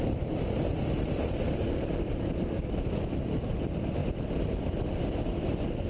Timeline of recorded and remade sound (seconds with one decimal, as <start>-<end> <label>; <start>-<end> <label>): 0.0-5.9 recorded